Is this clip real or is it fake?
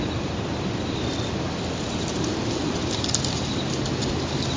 real